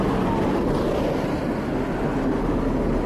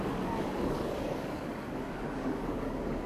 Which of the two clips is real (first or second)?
first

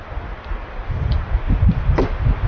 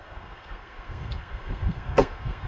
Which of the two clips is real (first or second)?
first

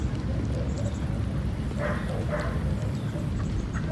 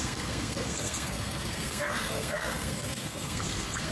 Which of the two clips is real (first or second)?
first